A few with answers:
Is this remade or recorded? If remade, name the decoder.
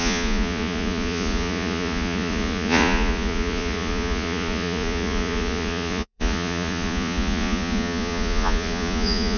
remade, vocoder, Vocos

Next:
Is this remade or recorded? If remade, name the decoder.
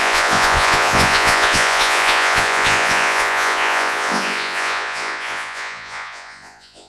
remade, vocoder, Vocos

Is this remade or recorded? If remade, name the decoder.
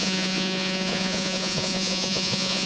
remade, vocoder, Vocos